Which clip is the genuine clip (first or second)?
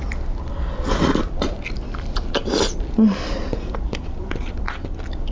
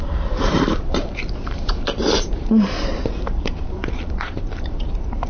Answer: first